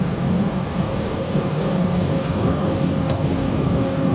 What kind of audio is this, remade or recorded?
remade